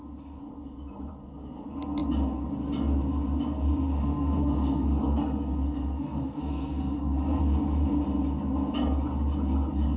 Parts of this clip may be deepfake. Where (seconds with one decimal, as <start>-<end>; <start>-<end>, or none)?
4.0-7.4